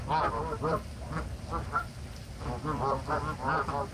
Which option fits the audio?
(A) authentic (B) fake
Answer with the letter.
A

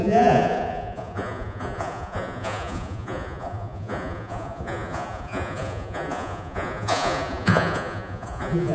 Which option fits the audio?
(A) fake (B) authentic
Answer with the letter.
A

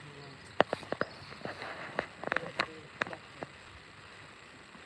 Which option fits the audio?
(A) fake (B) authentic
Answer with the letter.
B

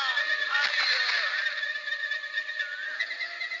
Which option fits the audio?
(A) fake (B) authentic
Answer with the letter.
B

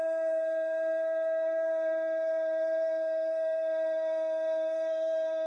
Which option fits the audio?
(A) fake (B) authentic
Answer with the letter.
A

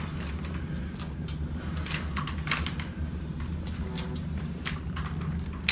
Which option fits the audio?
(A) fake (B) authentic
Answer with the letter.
B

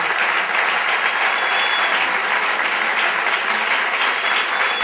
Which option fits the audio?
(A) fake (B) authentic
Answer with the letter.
B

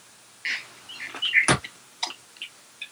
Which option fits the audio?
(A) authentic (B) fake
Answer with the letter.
A